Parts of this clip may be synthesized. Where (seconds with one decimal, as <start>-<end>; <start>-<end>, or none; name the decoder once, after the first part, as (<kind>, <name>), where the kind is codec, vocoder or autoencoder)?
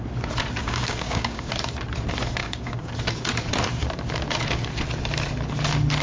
0.6-1.5 (codec, DAC); 2.4-2.9